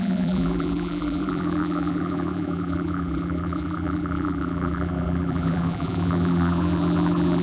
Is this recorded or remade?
remade